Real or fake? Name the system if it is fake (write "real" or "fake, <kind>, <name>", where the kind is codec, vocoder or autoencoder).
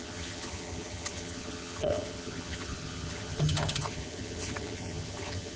fake, vocoder, HiFi-GAN